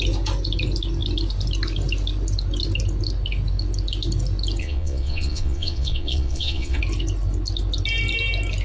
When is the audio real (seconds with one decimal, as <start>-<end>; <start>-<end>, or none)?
0.0-4.6; 6.8-8.6